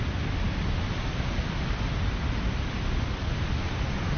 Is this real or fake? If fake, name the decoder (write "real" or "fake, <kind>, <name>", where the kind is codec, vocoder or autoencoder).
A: real